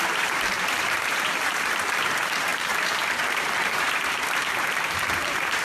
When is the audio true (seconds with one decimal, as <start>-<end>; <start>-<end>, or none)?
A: none